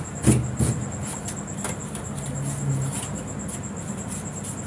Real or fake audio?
real